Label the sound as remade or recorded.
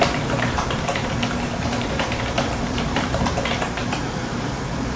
remade